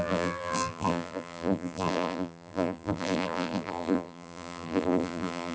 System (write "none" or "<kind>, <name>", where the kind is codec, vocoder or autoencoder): vocoder, BigVGAN v2